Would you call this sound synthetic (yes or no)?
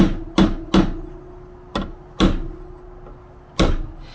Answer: no